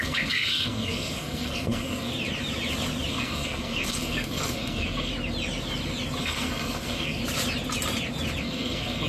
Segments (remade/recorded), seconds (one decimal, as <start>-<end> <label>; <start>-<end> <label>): 0.0-2.1 remade; 2.1-3.1 recorded; 3.1-5.1 remade; 5.1-6.2 recorded; 6.2-7.2 remade; 7.2-8.4 recorded; 8.4-9.1 remade